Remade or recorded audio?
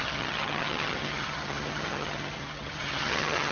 remade